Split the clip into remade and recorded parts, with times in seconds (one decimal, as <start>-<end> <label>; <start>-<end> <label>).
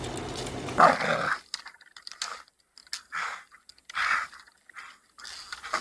0.0-5.8 recorded